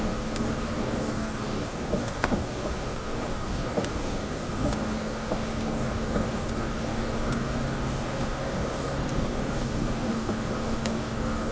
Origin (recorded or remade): remade